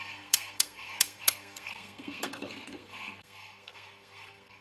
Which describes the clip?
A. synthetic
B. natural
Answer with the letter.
A